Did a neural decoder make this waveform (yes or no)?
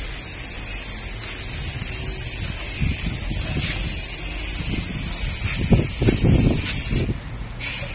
no